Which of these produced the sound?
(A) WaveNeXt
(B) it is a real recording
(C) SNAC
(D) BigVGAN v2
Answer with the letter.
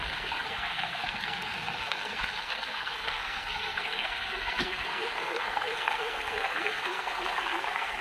C